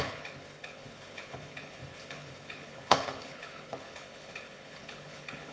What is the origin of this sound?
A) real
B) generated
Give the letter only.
B